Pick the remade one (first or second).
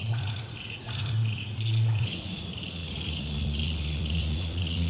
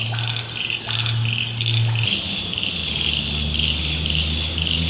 first